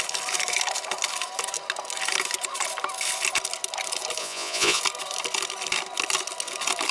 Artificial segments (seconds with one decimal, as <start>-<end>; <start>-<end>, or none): 4.2-4.8